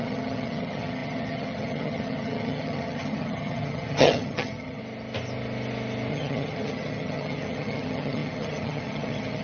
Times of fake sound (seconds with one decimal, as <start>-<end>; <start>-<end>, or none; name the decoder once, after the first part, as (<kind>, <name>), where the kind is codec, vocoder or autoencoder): 0.0-4.8 (vocoder, HiFi-GAN); 6.1-9.4